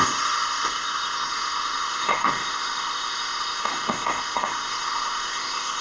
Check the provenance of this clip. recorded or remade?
remade